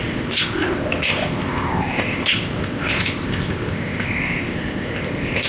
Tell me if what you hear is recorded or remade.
remade